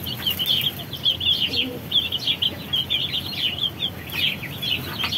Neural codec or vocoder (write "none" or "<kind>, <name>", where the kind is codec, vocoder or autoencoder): none